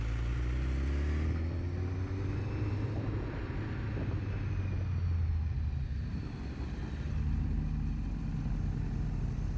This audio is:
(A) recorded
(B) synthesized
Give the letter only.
A